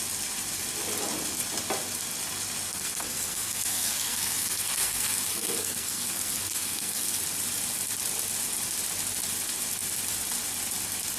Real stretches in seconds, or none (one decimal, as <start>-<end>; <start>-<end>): 0.0-2.7; 7.2-11.2